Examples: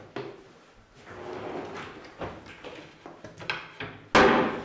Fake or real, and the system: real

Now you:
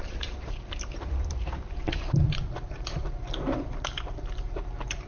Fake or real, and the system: fake, vocoder, BigVGAN v2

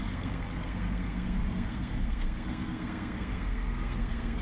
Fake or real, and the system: fake, codec, SNAC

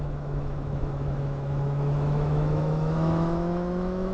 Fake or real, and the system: fake, autoencoder, DAC-VAE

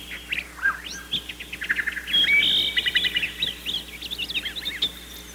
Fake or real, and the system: real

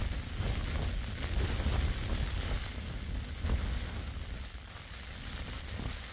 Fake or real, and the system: real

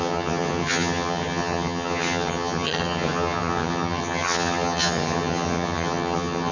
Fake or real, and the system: fake, vocoder, HiFi-GAN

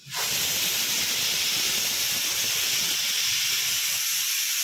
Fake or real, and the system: real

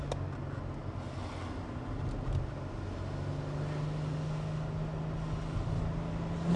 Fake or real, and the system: real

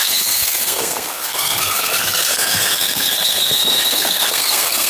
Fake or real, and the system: fake, codec, SNAC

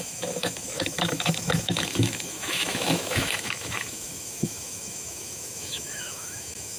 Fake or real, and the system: fake, autoencoder, DAC-VAE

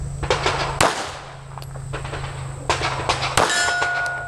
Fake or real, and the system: real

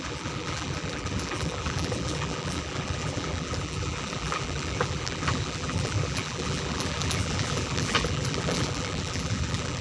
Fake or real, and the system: fake, vocoder, BigVGAN v2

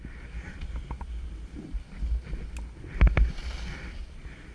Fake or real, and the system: real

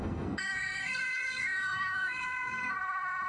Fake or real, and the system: fake, codec, SNAC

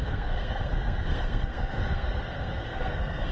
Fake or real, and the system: fake, codec, SNAC